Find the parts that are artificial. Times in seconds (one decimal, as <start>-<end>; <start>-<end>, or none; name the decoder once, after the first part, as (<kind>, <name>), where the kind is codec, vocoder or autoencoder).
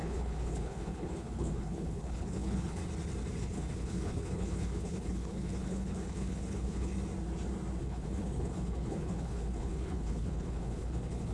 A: 0.0-2.8 (codec, HILCodec); 3.4-6.9; 7.8-11.3